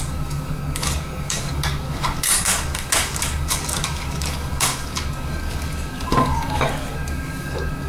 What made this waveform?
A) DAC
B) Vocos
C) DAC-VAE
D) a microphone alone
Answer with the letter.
A